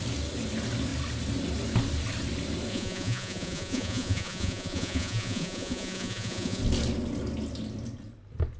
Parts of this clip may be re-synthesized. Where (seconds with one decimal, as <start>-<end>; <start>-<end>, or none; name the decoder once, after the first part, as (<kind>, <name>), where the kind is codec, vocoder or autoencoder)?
2.7-6.6 (vocoder, Vocos)